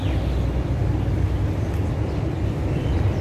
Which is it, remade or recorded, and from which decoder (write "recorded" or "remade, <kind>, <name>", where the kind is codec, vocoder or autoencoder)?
recorded